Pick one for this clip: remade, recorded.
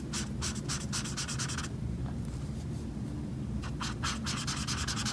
recorded